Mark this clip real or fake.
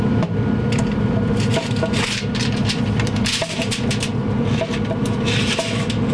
real